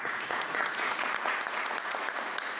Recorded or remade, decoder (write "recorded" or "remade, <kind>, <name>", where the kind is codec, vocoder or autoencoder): remade, vocoder, Vocos